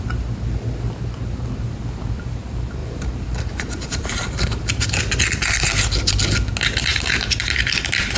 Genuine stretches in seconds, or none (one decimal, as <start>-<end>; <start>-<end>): 0.0-2.8; 5.0-6.9; 7.6-8.2